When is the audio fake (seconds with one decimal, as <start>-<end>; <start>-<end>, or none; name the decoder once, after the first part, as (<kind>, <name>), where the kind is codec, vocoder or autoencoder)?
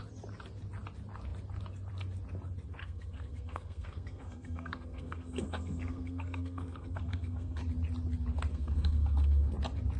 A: 2.8-7.6 (codec, SNAC); 8.5-9.5